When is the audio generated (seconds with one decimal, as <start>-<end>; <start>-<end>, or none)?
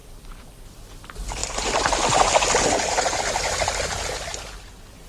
0.0-0.5; 1.4-4.5